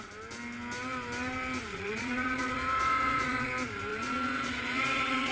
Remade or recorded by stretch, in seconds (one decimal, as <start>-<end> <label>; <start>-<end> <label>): 0.0-1.7 recorded; 1.7-3.5 remade; 3.5-3.9 recorded; 3.9-5.3 remade